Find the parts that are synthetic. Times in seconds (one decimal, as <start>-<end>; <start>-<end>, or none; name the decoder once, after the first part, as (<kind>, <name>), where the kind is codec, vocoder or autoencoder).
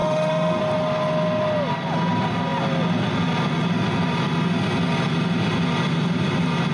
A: 0.0-0.6 (autoencoder, DAC-VAE)